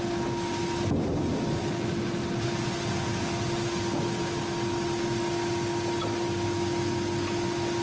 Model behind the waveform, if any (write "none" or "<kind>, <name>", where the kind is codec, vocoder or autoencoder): none